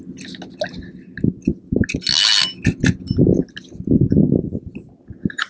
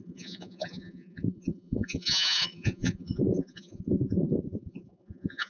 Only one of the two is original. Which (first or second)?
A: first